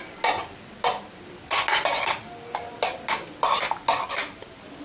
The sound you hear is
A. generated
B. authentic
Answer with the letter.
B